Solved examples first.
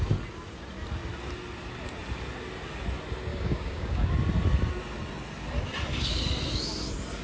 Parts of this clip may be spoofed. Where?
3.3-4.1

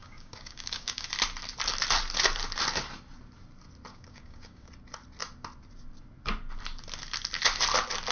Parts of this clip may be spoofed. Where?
0.0-1.1; 3.9-4.7

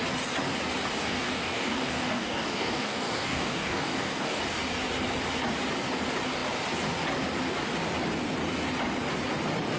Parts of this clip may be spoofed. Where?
1.0-4.4

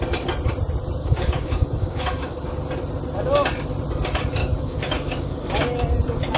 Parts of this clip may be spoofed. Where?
1.0-2.5; 4.4-5.5

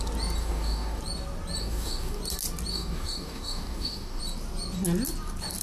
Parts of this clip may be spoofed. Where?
0.4-1.0; 1.6-2.2; 2.7-4.2

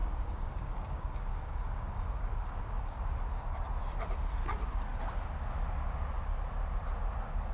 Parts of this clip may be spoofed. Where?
0.0-3.0